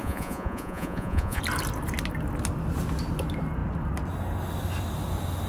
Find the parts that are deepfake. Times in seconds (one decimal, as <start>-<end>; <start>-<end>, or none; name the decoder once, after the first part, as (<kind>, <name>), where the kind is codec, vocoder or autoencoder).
0.0-1.4 (vocoder, Vocos)